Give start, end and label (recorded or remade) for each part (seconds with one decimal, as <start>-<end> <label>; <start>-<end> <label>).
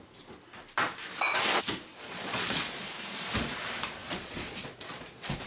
0.0-1.9 recorded; 1.9-2.8 remade; 2.8-4.0 recorded; 4.0-5.5 remade